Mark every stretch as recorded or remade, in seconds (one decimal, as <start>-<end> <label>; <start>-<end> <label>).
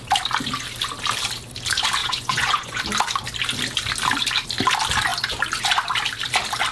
0.0-2.0 recorded; 2.0-2.8 remade; 2.8-6.7 recorded